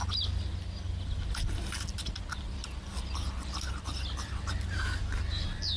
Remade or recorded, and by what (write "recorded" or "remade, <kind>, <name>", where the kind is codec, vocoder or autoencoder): recorded